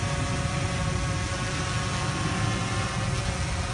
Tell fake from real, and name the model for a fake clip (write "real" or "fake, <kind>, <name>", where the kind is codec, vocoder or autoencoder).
real